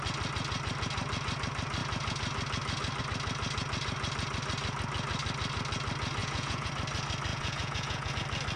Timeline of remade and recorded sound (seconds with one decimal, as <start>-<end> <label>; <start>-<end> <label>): 0.0-6.2 recorded; 6.2-6.7 remade; 6.7-7.3 recorded; 7.3-8.1 remade; 8.1-8.6 recorded